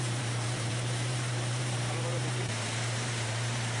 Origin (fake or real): fake